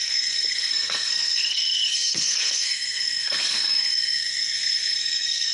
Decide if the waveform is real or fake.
fake